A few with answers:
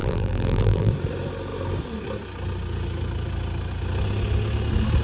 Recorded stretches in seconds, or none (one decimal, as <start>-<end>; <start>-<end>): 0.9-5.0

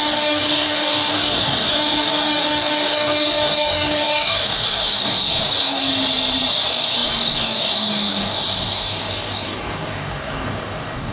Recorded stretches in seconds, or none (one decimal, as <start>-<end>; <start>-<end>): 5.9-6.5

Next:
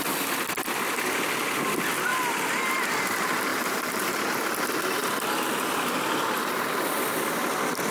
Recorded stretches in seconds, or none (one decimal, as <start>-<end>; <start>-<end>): 0.0-3.5; 4.1-7.9

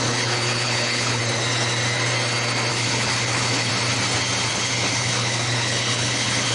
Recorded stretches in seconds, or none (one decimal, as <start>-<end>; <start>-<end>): 1.2-2.7; 3.7-4.5

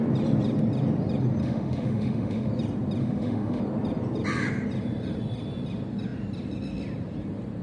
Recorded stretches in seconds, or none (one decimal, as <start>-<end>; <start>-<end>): 0.0-1.4; 2.5-3.0; 3.6-7.6